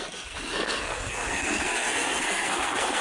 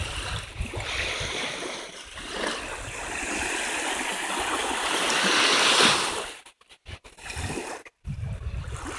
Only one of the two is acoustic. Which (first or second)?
second